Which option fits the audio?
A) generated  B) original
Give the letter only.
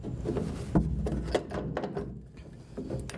B